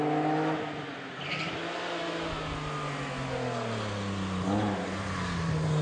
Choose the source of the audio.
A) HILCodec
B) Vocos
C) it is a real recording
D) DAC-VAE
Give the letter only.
C